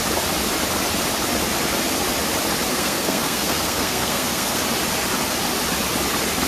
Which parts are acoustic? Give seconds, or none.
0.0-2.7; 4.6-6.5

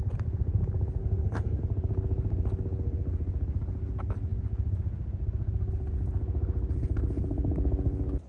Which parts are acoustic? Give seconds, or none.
0.0-1.0; 1.6-8.3

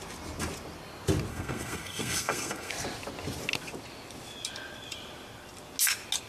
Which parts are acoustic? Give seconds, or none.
0.0-1.3; 2.7-6.3

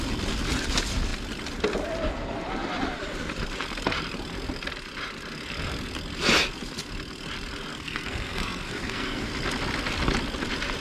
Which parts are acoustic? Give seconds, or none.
0.0-7.7; 9.3-10.8

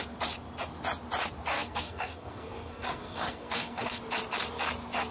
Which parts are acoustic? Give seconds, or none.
0.0-1.5; 4.0-5.1

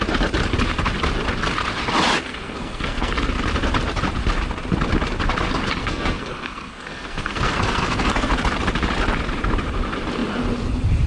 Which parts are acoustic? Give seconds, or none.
0.0-2.3; 3.3-5.8; 8.3-11.1

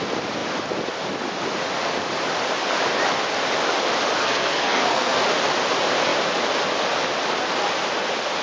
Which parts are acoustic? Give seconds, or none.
0.0-4.2; 5.2-8.4

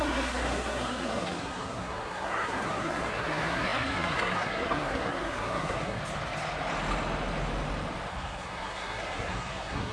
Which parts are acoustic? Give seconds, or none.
6.0-8.1